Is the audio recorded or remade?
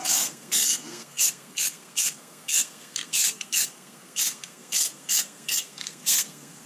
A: remade